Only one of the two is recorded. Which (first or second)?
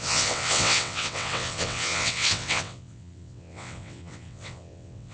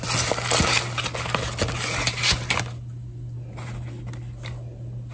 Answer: second